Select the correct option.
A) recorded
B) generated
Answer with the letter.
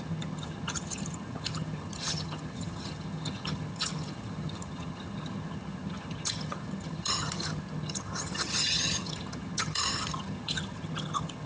B